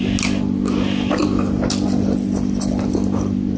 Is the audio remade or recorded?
recorded